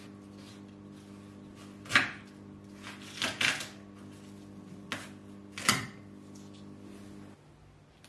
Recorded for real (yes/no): yes